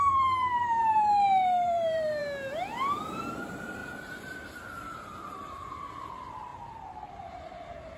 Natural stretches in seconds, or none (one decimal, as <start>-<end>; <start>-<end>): 2.2-3.0